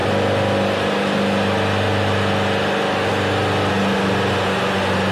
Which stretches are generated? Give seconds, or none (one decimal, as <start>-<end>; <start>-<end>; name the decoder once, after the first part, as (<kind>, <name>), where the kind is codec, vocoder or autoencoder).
none